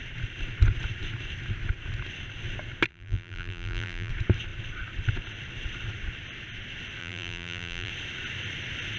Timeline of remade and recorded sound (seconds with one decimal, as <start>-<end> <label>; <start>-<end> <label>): 0.0-2.9 recorded; 2.9-4.1 remade; 4.1-7.0 recorded; 7.0-7.9 remade; 7.9-9.0 recorded